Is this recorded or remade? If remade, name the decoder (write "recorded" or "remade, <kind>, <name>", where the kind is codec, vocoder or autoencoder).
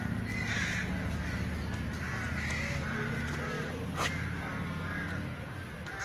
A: recorded